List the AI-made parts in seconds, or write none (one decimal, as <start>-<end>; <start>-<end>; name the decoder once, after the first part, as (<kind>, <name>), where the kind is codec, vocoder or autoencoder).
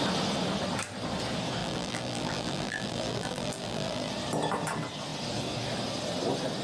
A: 1.6-4.1 (vocoder, BigVGAN v2)